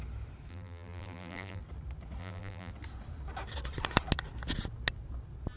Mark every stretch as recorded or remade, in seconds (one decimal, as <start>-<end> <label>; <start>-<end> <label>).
0.0-0.5 recorded; 0.5-1.6 remade; 1.6-2.2 recorded; 2.2-2.7 remade; 2.7-5.6 recorded